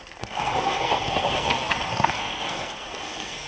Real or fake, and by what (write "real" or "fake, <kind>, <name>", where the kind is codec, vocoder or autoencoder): fake, codec, SNAC